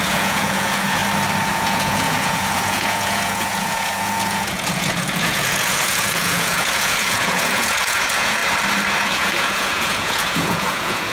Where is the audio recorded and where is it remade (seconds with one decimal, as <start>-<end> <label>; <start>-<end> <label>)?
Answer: 0.0-1.0 remade; 1.0-1.5 recorded; 1.5-8.4 remade; 8.4-9.0 recorded; 9.0-11.1 remade